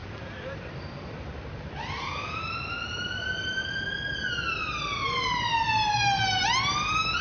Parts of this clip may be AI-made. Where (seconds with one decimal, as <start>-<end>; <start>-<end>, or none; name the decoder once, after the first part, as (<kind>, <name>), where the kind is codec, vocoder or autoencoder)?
0.0-3.8 (vocoder, BigVGAN v2)